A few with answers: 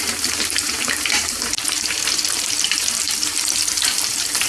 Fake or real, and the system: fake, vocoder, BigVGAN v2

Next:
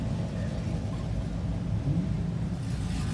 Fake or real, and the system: real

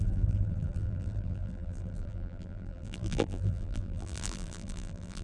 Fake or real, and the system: fake, vocoder, BigVGAN v2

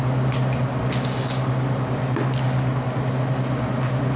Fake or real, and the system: real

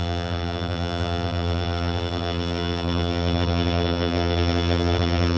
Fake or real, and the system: fake, vocoder, BigVGAN v2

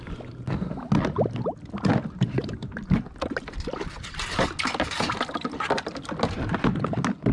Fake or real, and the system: real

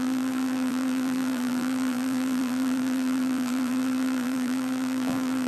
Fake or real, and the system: fake, vocoder, BigVGAN v2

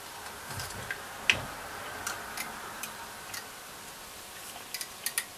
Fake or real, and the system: real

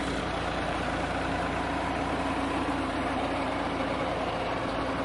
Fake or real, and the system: fake, vocoder, BigVGAN v2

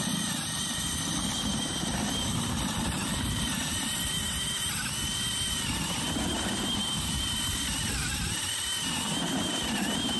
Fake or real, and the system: fake, vocoder, BigVGAN v2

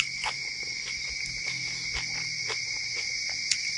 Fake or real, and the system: real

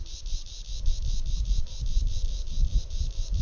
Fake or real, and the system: fake, vocoder, BigVGAN v2